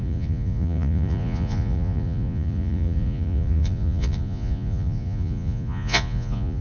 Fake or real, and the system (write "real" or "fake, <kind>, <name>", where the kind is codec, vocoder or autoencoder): fake, vocoder, Vocos